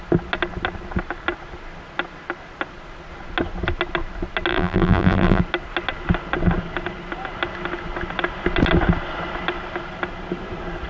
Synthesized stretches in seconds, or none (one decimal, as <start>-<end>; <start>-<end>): 4.5-5.4